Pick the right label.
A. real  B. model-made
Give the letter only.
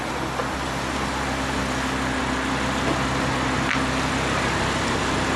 A